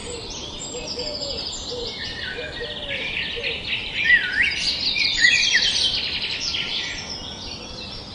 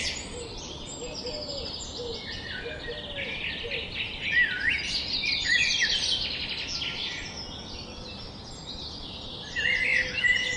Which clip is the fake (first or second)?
first